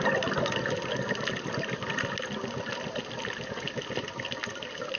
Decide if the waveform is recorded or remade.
recorded